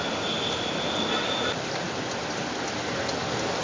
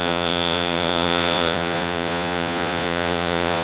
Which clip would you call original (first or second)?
first